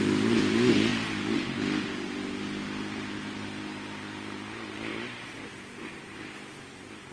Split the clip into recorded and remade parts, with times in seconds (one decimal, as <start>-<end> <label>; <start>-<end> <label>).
0.0-7.1 recorded